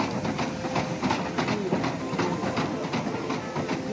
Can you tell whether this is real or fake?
real